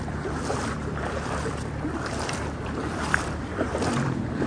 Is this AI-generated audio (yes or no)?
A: yes